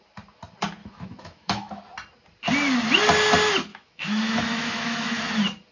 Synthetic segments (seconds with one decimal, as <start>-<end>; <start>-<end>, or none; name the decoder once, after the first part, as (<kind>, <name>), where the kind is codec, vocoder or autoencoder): 0.8-1.8 (autoencoder, DAC-VAE); 3.7-5.2